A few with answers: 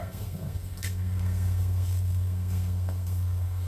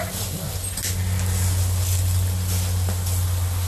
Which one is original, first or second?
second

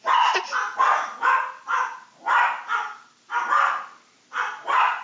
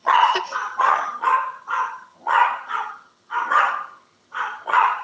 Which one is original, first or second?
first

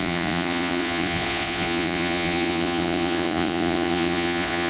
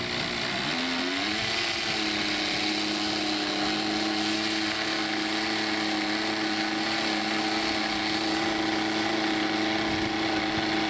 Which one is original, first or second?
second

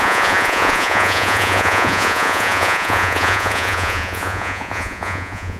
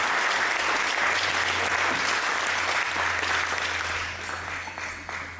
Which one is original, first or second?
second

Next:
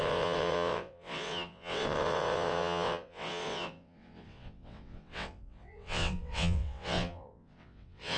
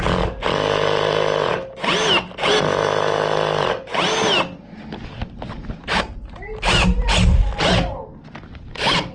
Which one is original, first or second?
second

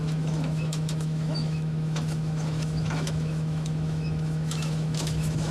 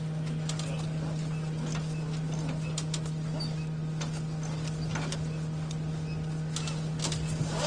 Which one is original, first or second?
second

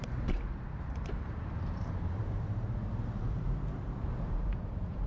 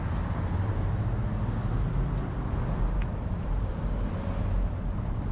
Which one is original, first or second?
second